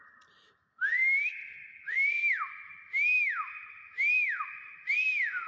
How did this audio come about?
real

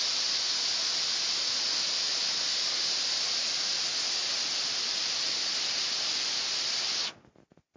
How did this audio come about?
real